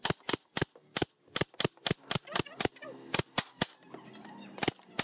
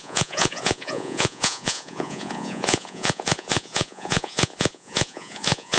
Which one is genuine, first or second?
first